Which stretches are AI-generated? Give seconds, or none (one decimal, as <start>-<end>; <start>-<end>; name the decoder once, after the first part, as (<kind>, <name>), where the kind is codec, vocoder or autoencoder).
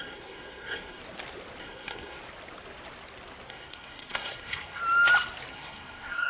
0.0-1.0 (codec, SNAC); 1.6-2.2; 3.5-4.8; 5.5-6.3